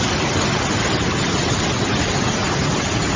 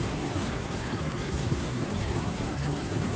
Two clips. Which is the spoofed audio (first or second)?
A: second